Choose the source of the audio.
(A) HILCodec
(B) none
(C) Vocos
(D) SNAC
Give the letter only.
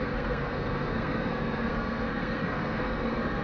D